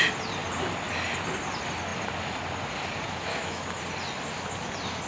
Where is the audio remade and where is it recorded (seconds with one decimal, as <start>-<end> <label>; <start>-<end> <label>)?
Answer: 0.0-3.3 recorded; 3.3-3.8 remade; 3.8-5.1 recorded